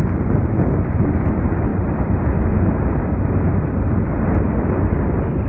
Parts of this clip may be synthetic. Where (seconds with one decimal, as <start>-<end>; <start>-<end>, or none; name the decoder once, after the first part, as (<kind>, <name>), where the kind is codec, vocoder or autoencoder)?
none